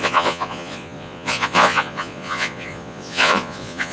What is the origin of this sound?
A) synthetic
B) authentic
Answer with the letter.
A